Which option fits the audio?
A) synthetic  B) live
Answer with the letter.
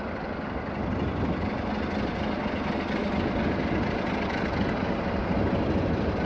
B